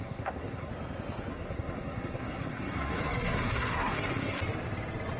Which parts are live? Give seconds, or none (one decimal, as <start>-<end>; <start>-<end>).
0.7-1.3; 4.4-5.2